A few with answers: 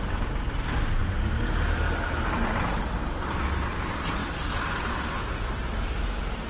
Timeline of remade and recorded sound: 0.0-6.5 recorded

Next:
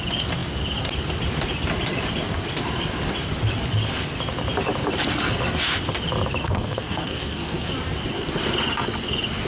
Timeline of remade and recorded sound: 0.0-6.4 recorded; 6.4-7.7 remade; 7.7-9.5 recorded

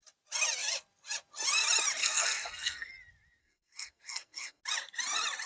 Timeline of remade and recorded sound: 0.0-2.0 recorded; 2.0-2.9 remade; 2.9-3.4 recorded; 3.4-4.6 remade; 4.6-5.5 recorded

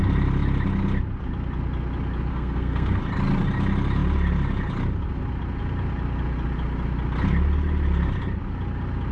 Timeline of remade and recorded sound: 0.0-2.3 recorded; 2.3-3.0 remade; 3.0-9.1 recorded

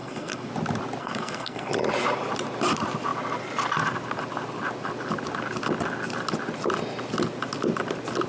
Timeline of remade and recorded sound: 0.0-0.5 remade; 0.5-1.0 recorded; 1.0-1.7 remade; 1.7-8.3 recorded